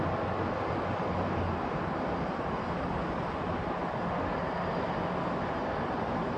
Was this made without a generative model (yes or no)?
yes